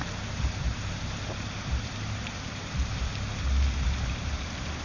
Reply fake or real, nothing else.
fake